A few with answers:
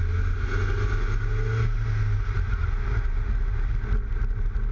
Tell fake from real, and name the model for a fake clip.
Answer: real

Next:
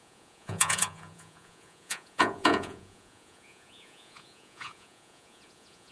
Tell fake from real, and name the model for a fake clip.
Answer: fake, vocoder, Vocos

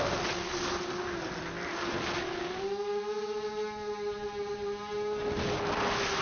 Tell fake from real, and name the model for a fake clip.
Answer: real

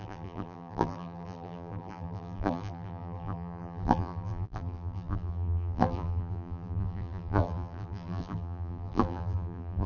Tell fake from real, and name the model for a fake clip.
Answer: fake, vocoder, BigVGAN v2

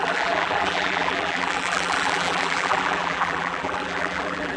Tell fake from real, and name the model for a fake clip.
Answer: fake, vocoder, BigVGAN v2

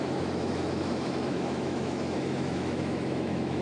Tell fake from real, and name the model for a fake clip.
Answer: fake, autoencoder, DAC-VAE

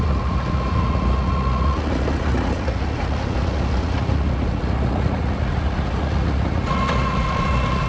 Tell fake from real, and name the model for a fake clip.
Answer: fake, vocoder, Vocos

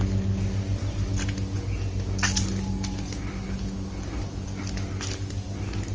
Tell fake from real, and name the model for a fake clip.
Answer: real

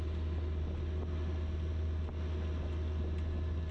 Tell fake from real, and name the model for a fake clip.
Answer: real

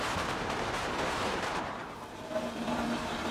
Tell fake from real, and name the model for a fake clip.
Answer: fake, vocoder, BigVGAN v2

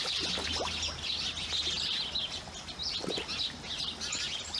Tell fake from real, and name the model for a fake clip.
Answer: real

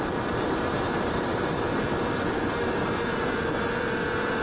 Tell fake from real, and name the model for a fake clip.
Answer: fake, vocoder, BigVGAN v2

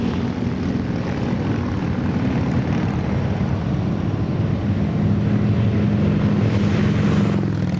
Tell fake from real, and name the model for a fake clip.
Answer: real